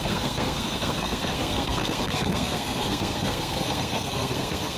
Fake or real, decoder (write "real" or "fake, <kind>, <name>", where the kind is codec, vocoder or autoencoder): fake, codec, SNAC